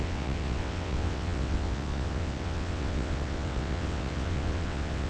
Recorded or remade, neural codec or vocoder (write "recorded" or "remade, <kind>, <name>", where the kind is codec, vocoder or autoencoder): remade, vocoder, WaveNeXt